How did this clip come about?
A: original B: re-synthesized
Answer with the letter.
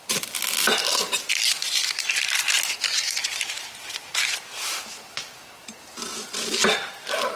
A